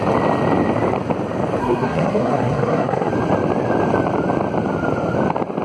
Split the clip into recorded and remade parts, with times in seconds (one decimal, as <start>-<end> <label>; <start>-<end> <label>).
0.0-1.6 recorded; 1.6-3.1 remade; 3.1-5.6 recorded

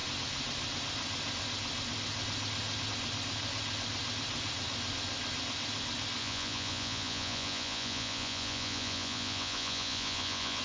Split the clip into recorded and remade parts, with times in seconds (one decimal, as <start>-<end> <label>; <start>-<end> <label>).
0.0-6.2 recorded; 6.2-10.6 remade